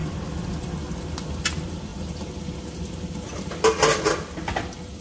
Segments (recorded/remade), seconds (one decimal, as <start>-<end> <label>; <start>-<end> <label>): 0.0-5.0 recorded